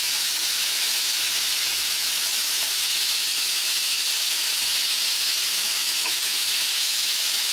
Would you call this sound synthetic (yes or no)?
yes